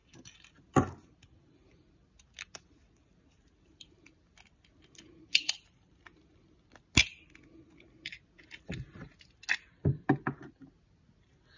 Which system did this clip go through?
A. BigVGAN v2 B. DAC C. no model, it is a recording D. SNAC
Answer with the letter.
C